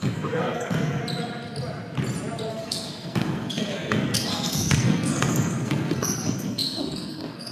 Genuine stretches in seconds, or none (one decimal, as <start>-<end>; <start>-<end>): 1.0-2.5